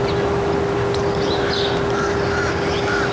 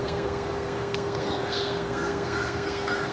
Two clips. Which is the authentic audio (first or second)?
first